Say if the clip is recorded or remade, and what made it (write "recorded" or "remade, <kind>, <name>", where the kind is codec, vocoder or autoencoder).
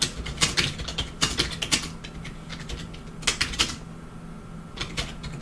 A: recorded